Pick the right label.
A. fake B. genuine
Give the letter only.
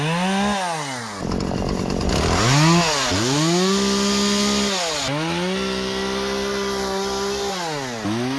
B